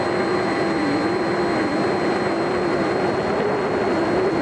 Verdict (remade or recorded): recorded